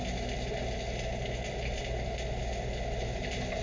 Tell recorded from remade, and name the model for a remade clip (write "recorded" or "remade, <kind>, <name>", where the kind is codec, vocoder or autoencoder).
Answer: recorded